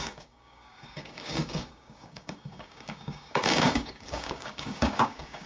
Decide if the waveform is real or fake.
fake